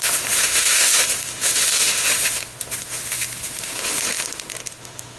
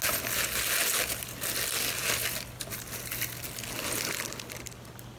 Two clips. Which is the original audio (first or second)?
second